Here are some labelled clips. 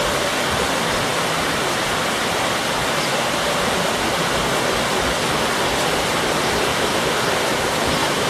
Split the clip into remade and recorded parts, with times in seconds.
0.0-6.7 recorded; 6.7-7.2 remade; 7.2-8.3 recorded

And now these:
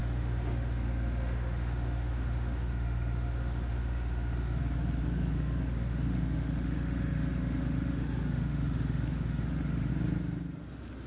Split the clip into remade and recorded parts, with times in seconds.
0.0-4.6 remade; 4.6-5.0 recorded; 5.0-9.9 remade; 9.9-11.1 recorded

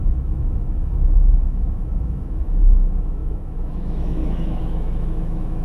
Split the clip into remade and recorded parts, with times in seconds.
0.0-5.6 remade

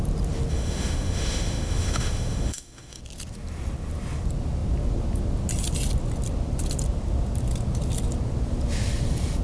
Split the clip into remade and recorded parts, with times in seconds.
0.0-0.5 recorded; 0.5-3.0 remade; 3.0-9.4 recorded

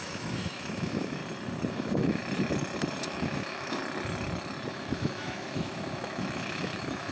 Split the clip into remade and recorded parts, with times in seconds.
0.0-1.2 remade; 1.2-1.7 recorded; 1.7-2.2 remade; 2.2-3.0 recorded; 3.0-3.8 remade; 3.8-4.7 recorded; 4.7-7.1 remade

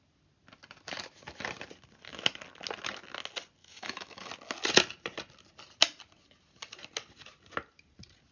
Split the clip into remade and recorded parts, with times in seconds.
0.0-3.6 recorded; 3.6-4.3 remade; 4.3-8.3 recorded

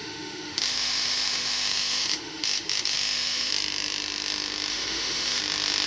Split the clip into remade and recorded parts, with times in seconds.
0.0-3.5 remade; 3.5-4.7 recorded; 4.7-5.4 remade; 5.4-5.9 recorded

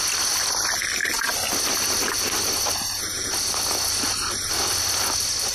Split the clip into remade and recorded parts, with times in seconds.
0.0-5.5 recorded